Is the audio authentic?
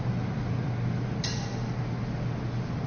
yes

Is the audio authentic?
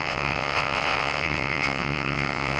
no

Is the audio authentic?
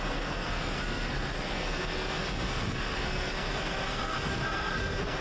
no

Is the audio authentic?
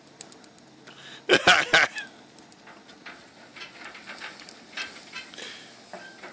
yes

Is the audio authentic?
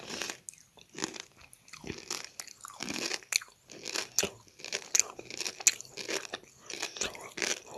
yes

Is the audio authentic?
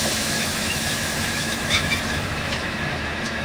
no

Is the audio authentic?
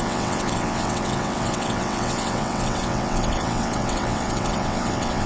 no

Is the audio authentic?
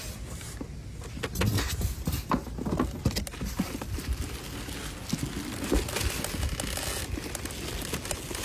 yes